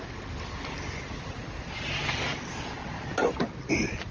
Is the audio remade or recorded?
recorded